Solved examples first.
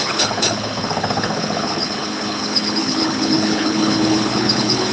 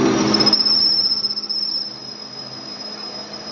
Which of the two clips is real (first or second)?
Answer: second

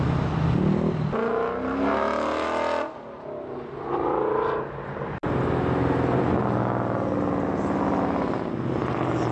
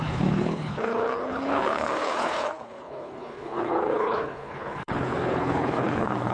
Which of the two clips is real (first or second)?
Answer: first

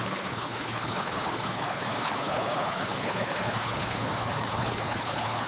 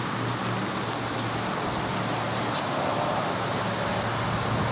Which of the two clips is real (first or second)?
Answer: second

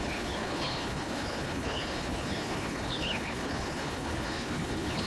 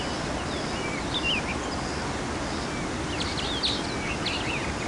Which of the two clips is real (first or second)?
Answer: second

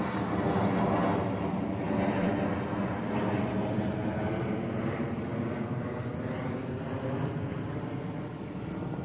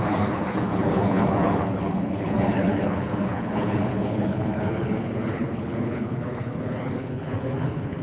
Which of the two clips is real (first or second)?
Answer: first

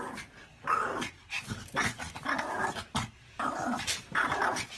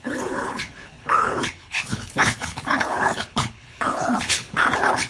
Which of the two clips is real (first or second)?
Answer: first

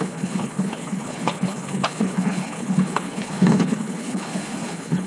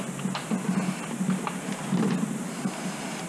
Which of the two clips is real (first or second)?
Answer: second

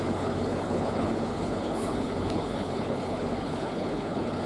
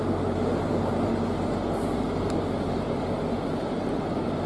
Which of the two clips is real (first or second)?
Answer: second